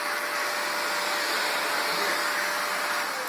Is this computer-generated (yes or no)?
no